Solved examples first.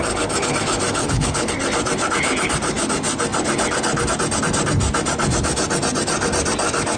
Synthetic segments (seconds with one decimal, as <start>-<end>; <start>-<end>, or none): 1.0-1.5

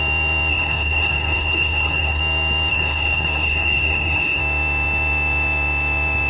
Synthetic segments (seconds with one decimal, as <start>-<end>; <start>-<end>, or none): 0.5-2.2; 2.7-4.4

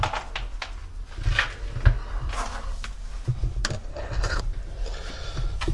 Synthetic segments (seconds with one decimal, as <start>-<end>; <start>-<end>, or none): 3.9-4.4